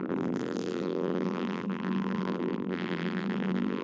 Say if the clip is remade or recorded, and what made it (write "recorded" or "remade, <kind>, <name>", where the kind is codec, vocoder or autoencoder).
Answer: remade, vocoder, BigVGAN v2